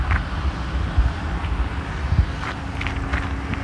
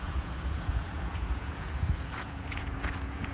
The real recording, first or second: first